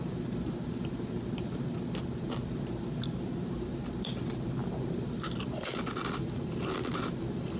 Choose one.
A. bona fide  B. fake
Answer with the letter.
A